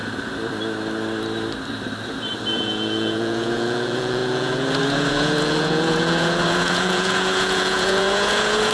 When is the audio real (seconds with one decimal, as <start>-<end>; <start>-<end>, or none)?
0.0-2.5